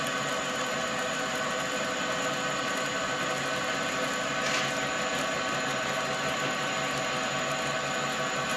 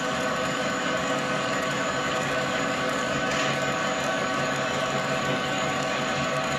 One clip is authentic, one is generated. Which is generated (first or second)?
second